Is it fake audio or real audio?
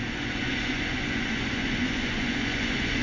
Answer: fake